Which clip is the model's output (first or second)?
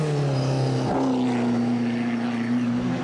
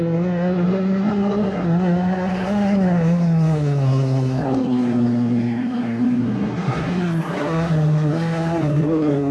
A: second